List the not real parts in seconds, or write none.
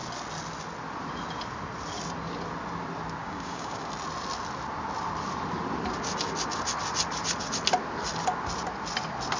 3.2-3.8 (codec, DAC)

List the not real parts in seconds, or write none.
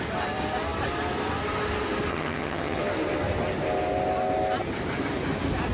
2.1-2.8 (vocoder, HiFi-GAN)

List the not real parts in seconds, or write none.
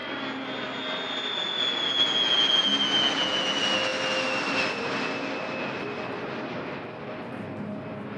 none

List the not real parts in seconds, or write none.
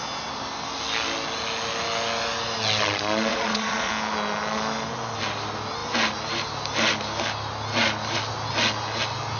3.3-3.9 (vocoder, Vocos)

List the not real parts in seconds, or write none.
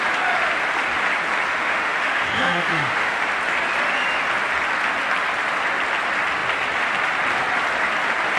1.5-3.2 (autoencoder, DAC-VAE)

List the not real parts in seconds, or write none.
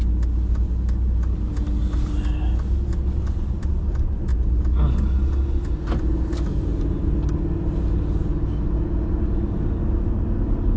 none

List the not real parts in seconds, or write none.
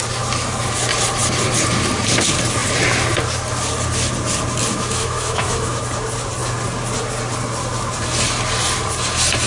4.7-5.8 (autoencoder, DAC-VAE)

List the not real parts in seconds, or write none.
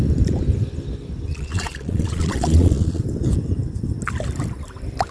1.3-3.0 (vocoder, Vocos)